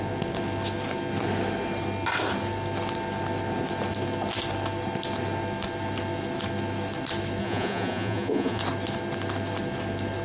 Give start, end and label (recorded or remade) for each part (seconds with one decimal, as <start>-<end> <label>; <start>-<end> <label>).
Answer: 0.0-7.4 recorded; 7.4-8.6 remade; 8.6-10.2 recorded